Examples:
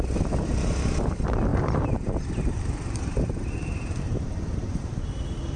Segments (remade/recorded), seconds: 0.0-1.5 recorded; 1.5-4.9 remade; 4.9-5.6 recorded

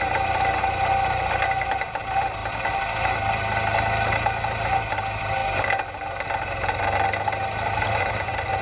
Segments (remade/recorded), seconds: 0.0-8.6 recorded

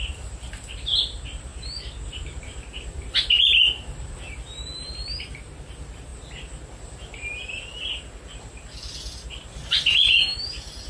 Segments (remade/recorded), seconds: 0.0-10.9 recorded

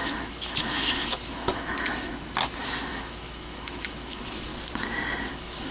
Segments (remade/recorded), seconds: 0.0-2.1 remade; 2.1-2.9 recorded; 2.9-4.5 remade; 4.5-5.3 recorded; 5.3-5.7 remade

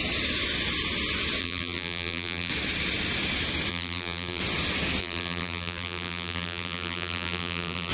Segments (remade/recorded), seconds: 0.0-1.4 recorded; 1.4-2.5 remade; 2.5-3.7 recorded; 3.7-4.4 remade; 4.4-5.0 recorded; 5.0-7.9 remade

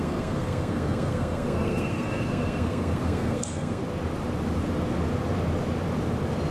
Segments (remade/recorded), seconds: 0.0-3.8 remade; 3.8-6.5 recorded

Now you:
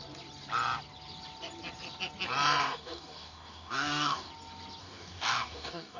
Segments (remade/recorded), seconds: 0.0-2.6 recorded; 2.6-4.3 remade; 4.3-4.8 recorded; 4.8-6.0 remade

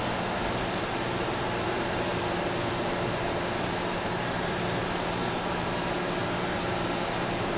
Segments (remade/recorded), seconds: 0.0-7.6 recorded